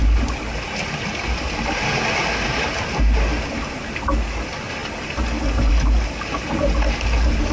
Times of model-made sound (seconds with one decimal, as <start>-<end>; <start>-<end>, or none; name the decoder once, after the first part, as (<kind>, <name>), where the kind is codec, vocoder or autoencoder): none